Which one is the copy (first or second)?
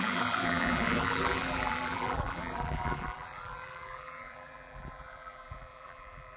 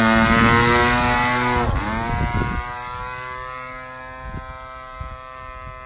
first